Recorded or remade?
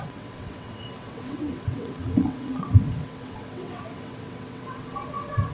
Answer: remade